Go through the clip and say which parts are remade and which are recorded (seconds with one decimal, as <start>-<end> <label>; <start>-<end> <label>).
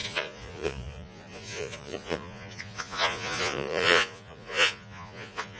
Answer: 0.0-5.6 remade